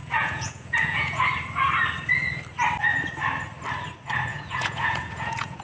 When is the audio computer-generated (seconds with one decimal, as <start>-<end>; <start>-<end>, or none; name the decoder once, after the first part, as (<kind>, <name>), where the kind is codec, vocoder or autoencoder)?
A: 0.0-1.2 (vocoder, Vocos); 4.3-5.6

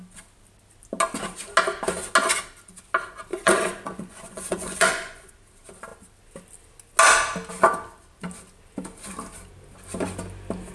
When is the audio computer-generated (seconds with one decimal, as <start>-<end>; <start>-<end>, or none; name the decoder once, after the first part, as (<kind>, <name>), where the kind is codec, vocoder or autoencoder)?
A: 3.3-5.3 (vocoder, Vocos)